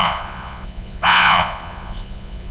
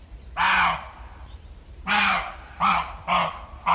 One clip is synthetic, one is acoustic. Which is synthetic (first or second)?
first